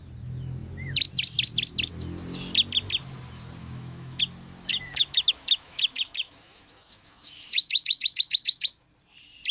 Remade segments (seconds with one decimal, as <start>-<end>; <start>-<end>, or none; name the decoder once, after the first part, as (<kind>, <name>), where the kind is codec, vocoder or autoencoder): 3.6-4.2 (autoencoder, DAC-VAE); 4.7-8.7